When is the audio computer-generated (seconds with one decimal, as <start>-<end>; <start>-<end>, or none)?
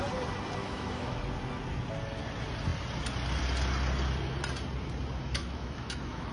0.6-1.2; 5.2-6.3